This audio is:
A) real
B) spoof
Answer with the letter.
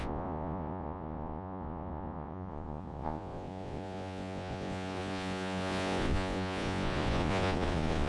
B